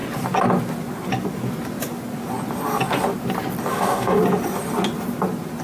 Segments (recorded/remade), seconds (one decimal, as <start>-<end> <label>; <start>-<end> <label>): 0.0-3.7 recorded; 3.7-4.2 remade; 4.2-5.6 recorded